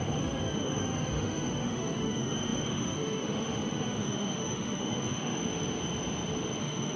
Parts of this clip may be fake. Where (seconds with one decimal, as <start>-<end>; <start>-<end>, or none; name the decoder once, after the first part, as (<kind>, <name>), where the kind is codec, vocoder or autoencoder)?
0.0-5.4 (autoencoder, DAC-VAE); 6.6-7.0